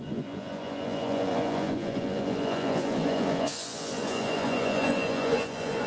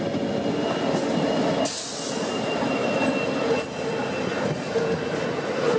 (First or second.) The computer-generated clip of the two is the first